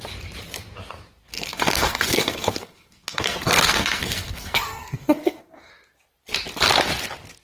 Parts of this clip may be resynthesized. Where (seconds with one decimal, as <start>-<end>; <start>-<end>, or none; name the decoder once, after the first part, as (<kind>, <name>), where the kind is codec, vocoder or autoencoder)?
1.3-5.7 (codec, SNAC)